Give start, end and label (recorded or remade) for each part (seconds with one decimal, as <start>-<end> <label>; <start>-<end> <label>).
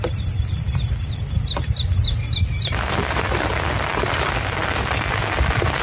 0.0-5.8 recorded